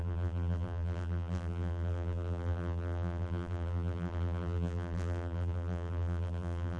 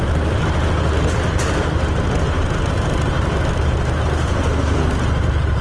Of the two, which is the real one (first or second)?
second